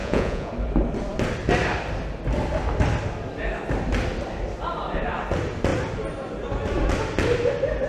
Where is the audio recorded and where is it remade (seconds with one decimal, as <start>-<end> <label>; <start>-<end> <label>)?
0.0-0.5 remade; 0.5-7.9 recorded